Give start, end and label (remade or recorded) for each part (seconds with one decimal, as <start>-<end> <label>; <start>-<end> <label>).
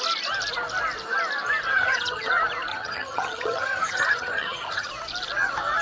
0.0-1.7 recorded; 1.7-2.3 remade; 2.3-2.7 recorded; 2.7-4.9 remade; 4.9-5.8 recorded